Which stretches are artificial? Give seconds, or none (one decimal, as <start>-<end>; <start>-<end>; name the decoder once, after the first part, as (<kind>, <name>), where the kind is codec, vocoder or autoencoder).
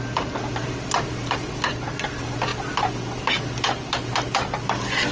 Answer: none